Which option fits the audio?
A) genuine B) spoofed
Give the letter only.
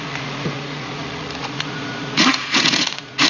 B